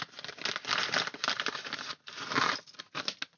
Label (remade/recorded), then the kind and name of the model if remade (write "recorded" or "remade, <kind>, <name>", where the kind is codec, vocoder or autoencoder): recorded